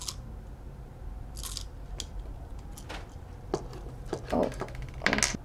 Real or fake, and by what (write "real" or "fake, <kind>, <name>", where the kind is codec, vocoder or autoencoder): real